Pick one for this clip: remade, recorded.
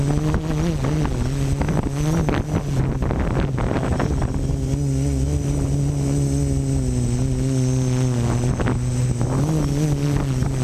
recorded